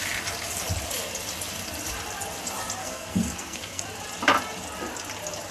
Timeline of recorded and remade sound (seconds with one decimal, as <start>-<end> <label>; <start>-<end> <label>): 0.0-2.8 recorded; 2.8-3.8 remade; 3.8-5.5 recorded